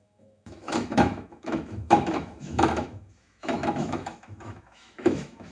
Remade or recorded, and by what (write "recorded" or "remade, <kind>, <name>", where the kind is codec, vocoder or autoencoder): remade, autoencoder, DAC-VAE